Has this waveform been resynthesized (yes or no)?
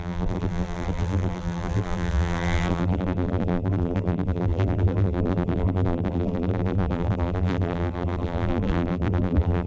yes